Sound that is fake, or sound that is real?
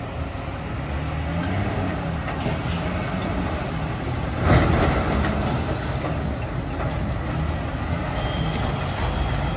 real